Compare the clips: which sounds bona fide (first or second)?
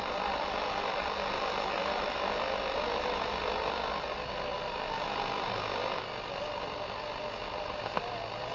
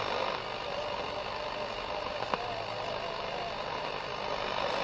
first